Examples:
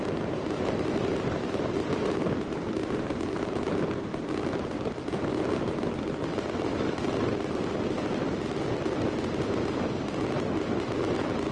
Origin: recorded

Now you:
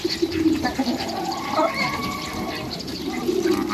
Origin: recorded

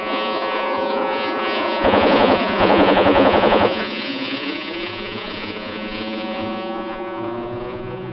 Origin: remade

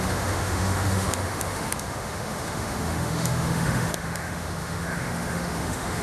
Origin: remade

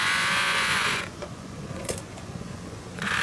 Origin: remade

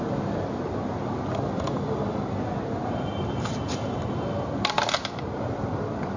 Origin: recorded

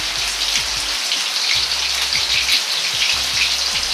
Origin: recorded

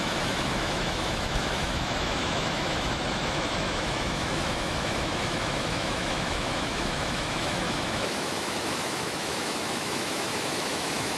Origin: remade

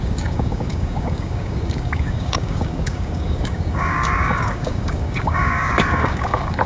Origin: remade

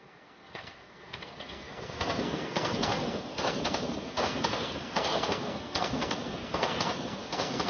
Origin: remade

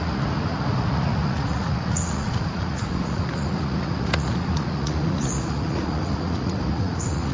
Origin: remade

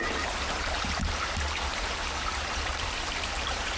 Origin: remade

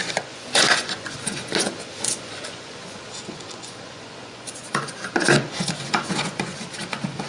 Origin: remade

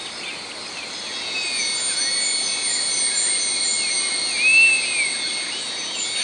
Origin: recorded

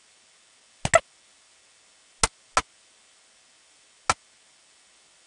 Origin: recorded